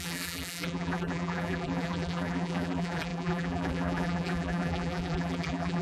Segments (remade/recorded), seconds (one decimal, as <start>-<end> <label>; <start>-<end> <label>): 0.0-5.8 remade